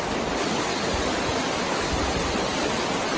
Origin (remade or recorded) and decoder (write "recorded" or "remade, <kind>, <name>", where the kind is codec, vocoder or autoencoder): recorded